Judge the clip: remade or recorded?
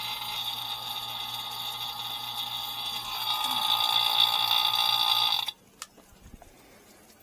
recorded